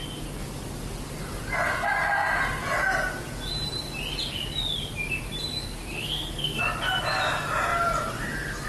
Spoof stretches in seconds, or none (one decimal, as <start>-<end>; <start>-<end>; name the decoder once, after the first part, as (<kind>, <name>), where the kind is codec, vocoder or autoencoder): 5.9-6.6 (codec, SNAC)